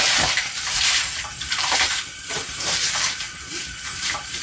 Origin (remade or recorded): remade